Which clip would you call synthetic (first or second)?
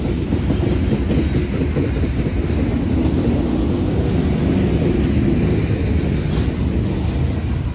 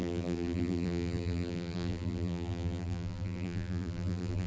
second